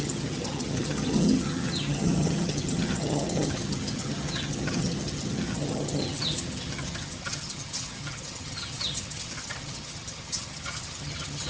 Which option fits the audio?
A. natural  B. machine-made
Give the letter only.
B